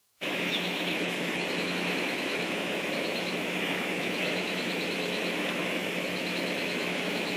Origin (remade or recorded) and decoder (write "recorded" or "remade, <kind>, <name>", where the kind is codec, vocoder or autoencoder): remade, autoencoder, DAC-VAE